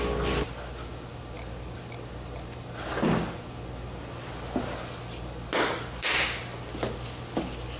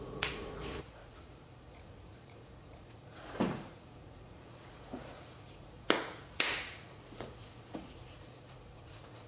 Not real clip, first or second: second